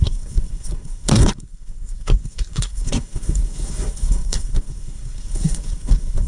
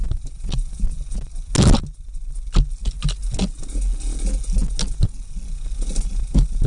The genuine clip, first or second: second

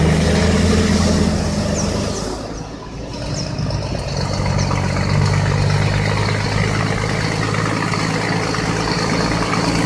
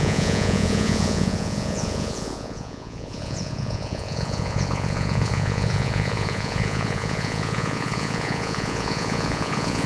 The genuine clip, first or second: first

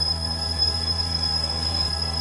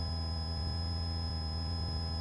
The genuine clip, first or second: second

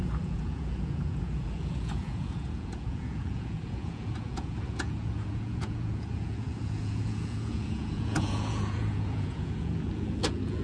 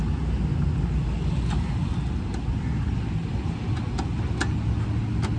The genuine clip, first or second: second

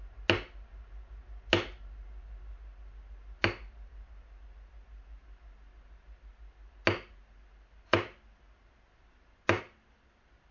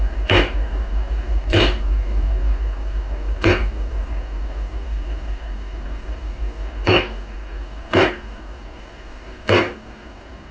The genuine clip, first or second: first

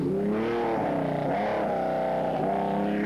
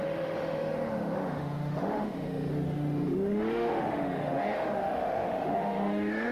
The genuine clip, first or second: first